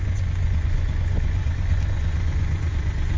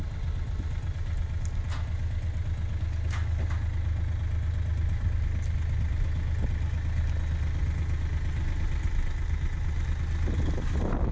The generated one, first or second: first